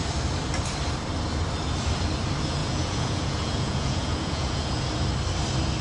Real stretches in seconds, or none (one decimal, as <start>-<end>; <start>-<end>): 0.0-2.6; 4.8-5.8